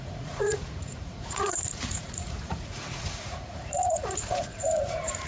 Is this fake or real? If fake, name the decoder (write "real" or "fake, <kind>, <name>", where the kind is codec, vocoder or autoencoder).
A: fake, vocoder, Vocos